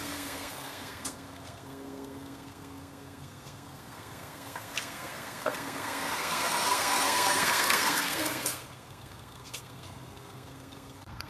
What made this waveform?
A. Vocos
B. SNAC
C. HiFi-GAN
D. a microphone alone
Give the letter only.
B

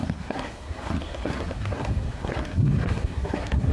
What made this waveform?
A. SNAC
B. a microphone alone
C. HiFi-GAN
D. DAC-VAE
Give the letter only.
A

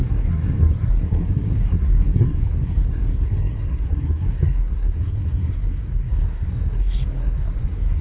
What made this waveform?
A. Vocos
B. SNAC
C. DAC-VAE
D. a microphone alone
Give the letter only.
B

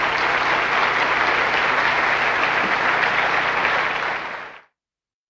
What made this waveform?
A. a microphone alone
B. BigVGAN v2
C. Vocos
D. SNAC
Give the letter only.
A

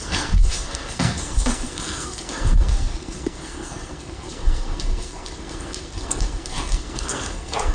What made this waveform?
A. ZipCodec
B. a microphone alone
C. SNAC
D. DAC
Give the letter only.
C